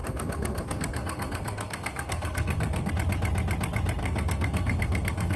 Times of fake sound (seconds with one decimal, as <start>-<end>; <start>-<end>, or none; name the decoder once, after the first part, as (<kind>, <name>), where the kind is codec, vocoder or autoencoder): 0.0-2.9 (codec, SNAC); 4.0-5.4